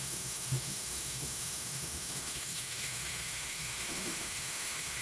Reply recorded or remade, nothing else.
remade